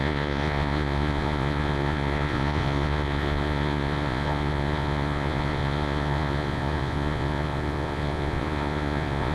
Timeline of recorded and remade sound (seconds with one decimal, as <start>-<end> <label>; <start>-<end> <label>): 0.0-9.3 remade

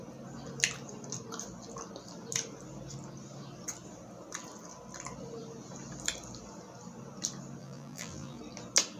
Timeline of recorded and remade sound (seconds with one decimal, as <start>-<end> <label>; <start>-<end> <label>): 0.0-7.6 recorded; 7.6-8.4 remade; 8.4-9.0 recorded

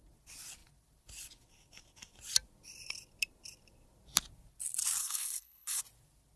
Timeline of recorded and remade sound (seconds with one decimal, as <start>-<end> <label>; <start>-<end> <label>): 0.0-5.0 recorded; 5.0-5.8 remade; 5.8-6.4 recorded

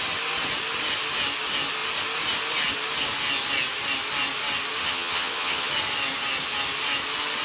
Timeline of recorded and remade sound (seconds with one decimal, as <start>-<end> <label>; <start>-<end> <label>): 0.0-4.8 recorded; 4.8-5.7 remade; 5.7-7.4 recorded